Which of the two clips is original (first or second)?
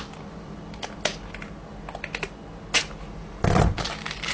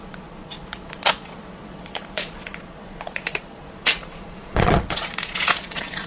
first